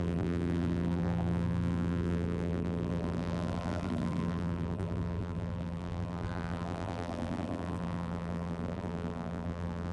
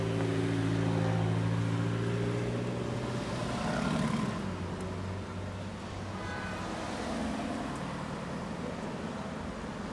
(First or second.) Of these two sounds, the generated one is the first